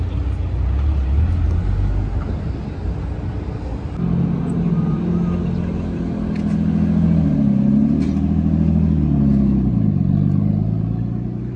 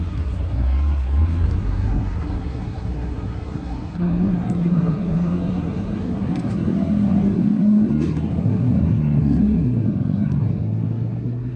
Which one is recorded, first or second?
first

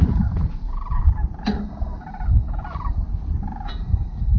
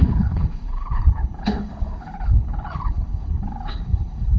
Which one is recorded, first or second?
first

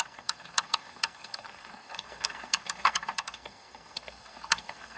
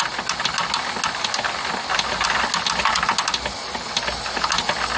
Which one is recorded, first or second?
second